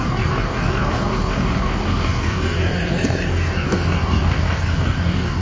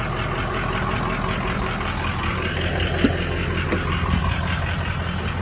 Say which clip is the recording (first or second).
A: second